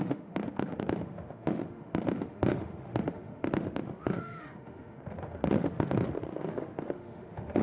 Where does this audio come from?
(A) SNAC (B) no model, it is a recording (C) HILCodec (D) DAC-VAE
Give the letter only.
D